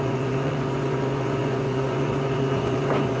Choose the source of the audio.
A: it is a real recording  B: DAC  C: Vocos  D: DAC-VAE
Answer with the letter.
C